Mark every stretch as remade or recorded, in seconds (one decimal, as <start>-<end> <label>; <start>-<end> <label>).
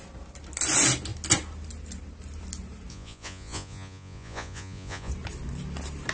0.0-2.9 recorded; 2.9-5.1 remade; 5.1-6.1 recorded